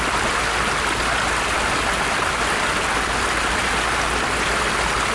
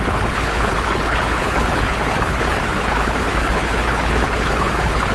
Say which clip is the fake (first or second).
second